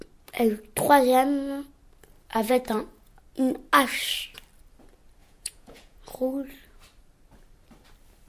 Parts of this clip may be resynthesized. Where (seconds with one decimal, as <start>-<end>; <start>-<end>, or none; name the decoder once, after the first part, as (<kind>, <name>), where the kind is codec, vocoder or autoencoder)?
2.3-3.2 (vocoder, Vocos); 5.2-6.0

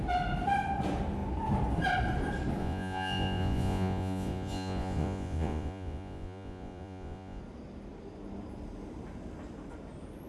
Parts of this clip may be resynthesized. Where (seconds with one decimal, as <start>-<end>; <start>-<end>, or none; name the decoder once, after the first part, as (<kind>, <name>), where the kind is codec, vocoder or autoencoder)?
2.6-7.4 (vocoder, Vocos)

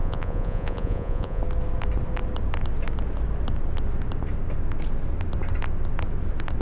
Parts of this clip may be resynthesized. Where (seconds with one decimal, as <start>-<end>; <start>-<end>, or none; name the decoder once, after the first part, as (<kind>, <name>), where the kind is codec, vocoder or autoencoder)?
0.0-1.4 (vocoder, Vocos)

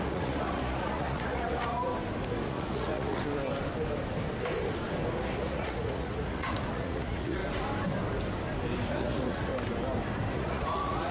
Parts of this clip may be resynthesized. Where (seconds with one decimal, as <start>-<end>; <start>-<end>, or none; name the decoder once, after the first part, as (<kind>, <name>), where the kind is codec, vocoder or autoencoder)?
0.0-1.9 (vocoder, Vocos); 2.5-3.2; 5.2-7.4; 8.9-9.5; 10.3-11.1